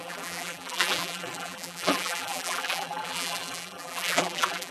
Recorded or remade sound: remade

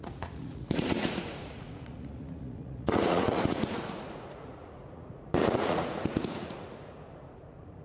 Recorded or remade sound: remade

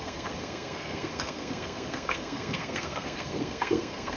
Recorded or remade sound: remade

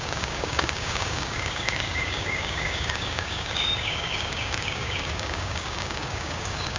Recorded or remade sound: remade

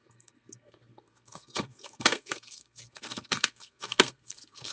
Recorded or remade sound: remade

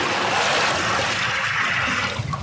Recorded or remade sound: recorded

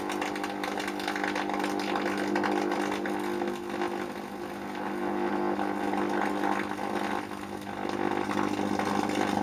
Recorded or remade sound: recorded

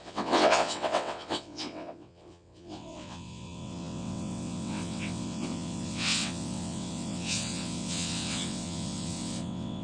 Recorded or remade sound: remade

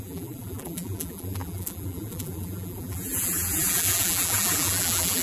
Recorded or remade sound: remade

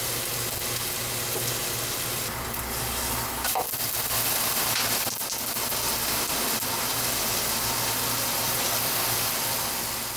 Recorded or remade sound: recorded